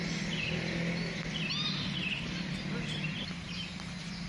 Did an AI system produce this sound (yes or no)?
no